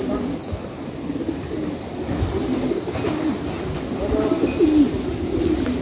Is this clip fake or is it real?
real